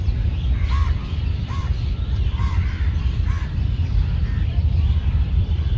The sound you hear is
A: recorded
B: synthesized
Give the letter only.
B